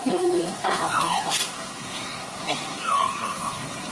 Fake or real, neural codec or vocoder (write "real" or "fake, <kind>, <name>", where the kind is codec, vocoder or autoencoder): fake, codec, SNAC